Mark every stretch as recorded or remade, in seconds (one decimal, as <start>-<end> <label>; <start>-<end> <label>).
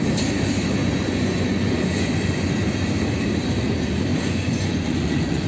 0.0-0.8 recorded; 0.8-2.5 remade; 2.5-4.1 recorded; 4.1-5.5 remade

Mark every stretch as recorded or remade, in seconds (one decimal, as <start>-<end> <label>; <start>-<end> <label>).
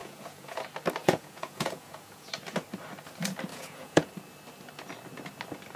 0.0-0.6 remade; 0.6-1.0 recorded; 1.0-2.3 remade; 2.3-3.5 recorded; 3.5-4.1 remade; 4.1-5.8 recorded